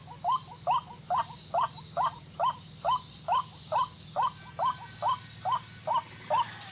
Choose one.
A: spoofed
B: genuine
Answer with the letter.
B